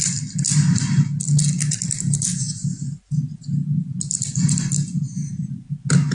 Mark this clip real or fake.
real